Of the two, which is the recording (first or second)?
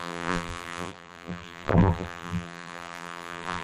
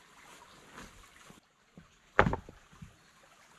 second